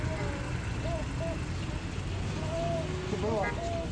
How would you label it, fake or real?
real